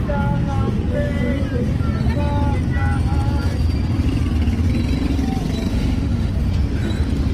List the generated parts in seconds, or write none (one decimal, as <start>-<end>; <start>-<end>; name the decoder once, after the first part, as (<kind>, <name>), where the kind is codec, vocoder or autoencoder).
5.7-6.3 (autoencoder, DAC-VAE)